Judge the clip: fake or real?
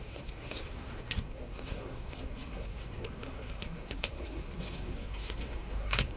fake